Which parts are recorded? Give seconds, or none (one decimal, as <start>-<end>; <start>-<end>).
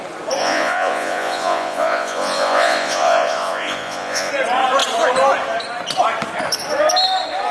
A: 0.0-0.4; 4.3-7.5